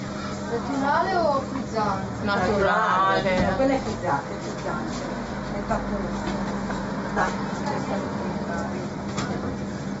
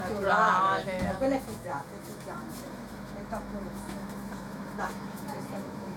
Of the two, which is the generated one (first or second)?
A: second